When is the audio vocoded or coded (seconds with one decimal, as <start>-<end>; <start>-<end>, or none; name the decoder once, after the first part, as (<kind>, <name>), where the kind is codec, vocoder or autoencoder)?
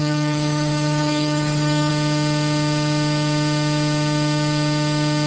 0.0-1.9 (codec, HILCodec)